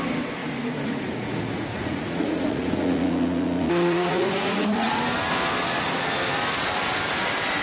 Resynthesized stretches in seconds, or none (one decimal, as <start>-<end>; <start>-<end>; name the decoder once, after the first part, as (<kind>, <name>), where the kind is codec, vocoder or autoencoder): 0.4-5.0 (vocoder, Vocos)